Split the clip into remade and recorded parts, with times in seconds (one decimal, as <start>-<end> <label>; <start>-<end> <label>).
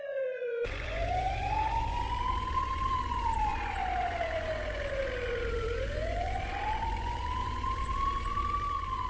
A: 0.0-9.1 remade